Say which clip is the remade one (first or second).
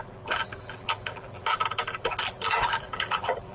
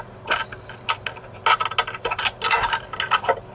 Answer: first